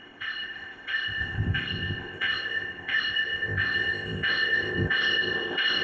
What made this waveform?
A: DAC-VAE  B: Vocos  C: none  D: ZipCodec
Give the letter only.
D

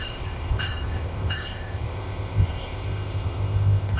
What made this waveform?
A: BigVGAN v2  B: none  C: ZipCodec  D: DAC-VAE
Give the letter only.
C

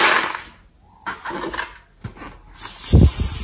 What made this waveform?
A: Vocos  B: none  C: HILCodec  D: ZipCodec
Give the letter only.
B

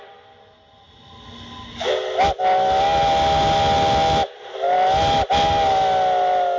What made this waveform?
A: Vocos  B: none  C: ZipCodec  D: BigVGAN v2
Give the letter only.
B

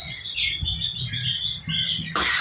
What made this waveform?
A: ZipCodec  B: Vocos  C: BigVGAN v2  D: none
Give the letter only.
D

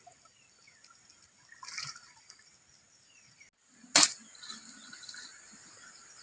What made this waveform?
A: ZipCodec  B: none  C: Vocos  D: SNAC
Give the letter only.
B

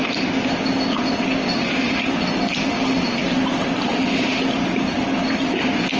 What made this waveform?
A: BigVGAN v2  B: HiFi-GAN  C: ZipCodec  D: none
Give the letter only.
D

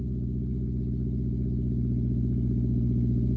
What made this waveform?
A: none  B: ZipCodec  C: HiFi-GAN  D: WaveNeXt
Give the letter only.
A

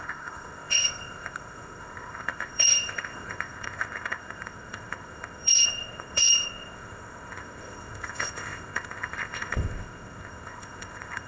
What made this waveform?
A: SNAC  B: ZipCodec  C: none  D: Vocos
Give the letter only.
B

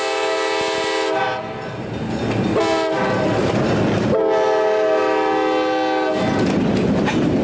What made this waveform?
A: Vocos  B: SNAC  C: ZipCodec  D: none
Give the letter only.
D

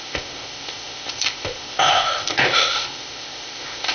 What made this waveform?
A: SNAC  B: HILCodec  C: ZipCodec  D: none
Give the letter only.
C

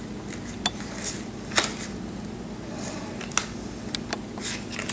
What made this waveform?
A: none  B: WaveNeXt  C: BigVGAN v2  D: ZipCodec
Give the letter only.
A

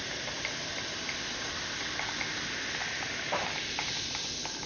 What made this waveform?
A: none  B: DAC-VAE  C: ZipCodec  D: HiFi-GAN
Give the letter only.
A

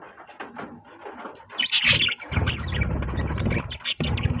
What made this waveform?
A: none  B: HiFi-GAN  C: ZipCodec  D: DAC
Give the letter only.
A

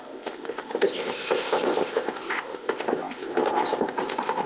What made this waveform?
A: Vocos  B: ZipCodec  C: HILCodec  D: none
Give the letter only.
B